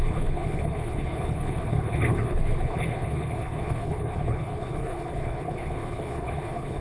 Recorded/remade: remade